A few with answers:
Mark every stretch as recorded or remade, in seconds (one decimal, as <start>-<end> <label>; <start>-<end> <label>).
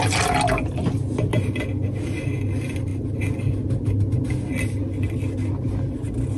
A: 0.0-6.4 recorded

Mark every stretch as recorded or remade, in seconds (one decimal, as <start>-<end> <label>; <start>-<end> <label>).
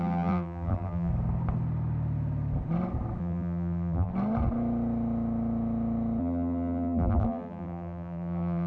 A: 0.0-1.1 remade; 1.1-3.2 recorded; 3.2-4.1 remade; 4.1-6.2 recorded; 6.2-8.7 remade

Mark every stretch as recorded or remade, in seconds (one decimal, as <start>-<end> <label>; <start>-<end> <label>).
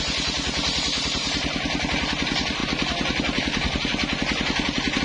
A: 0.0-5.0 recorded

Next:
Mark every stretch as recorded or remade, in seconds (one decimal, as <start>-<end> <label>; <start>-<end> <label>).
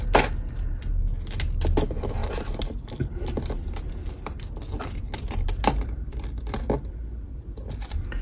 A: 0.0-2.2 recorded; 2.2-6.6 remade; 6.6-8.2 recorded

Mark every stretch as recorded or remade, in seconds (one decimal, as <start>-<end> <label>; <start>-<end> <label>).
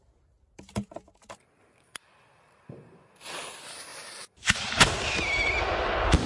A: 0.0-0.8 recorded; 0.8-1.6 remade; 1.6-3.9 recorded; 3.9-5.0 remade; 5.0-6.3 recorded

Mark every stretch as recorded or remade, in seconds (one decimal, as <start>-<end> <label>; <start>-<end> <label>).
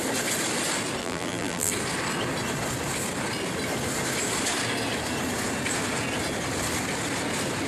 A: 0.0-1.0 recorded; 1.0-1.7 remade; 1.7-7.7 recorded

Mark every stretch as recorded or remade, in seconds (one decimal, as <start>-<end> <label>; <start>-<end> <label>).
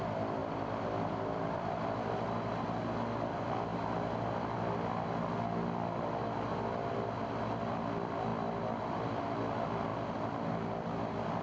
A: 0.0-0.4 recorded; 0.4-2.1 remade; 2.1-8.3 recorded; 8.3-9.2 remade; 9.2-11.4 recorded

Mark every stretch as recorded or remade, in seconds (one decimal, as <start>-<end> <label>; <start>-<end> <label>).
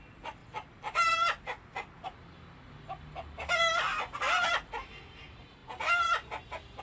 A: 0.0-6.8 recorded